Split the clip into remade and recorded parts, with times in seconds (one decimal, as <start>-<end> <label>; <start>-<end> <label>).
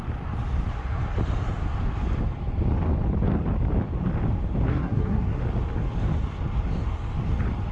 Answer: 0.0-4.7 recorded; 4.7-5.4 remade; 5.4-7.7 recorded